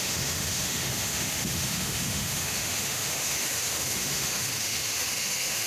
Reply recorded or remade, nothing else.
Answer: remade